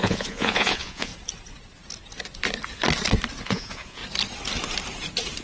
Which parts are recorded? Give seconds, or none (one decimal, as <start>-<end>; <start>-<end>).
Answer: 1.1-3.4; 4.0-5.4